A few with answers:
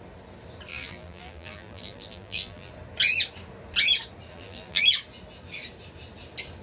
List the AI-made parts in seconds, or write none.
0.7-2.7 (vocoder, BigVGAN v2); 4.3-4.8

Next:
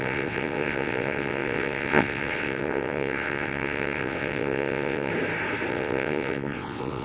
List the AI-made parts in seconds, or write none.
0.0-5.1 (vocoder, WaveNeXt); 5.7-7.0